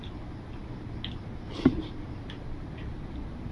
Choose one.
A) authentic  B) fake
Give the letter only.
A